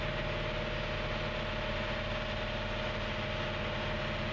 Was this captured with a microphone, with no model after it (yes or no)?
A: yes